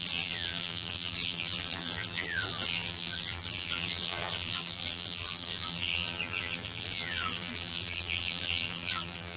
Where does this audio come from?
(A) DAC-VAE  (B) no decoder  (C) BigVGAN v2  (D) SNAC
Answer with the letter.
C